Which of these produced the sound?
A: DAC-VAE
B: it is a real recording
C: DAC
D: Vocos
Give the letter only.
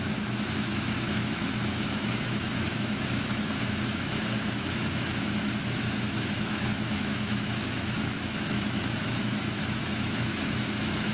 A